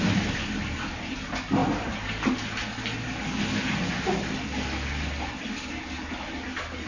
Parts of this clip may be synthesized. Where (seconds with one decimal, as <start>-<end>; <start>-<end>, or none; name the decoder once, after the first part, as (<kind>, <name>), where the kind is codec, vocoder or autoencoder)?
none